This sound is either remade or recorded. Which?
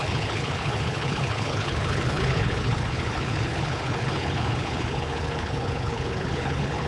remade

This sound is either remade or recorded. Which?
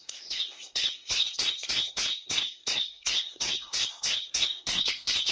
remade